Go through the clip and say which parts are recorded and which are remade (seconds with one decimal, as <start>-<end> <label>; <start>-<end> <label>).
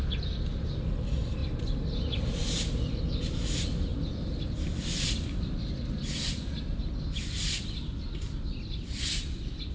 0.0-9.7 recorded